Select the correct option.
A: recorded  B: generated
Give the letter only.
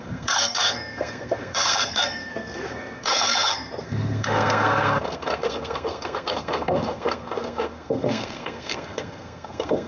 B